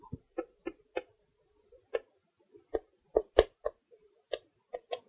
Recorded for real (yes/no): yes